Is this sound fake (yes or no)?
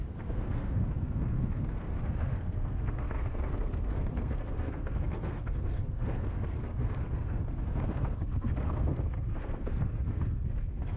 yes